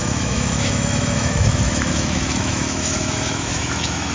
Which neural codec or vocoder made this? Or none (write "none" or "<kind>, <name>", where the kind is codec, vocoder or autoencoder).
autoencoder, DAC-VAE